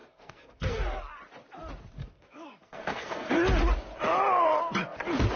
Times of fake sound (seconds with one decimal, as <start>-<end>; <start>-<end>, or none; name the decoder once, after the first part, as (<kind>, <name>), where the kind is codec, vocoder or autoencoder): 0.0-0.8 (codec, SNAC); 2.0-3.3